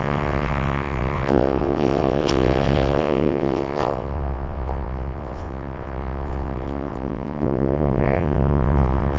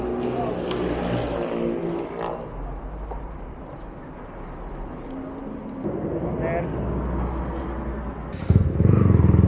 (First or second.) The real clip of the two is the second